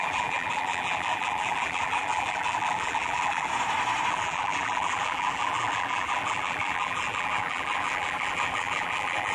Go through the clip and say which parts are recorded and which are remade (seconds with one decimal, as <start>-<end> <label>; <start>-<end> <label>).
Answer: 0.0-3.5 remade; 3.5-4.1 recorded; 4.1-9.3 remade